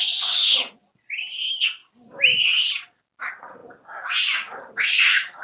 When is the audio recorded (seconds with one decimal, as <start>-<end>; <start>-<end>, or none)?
0.0-5.4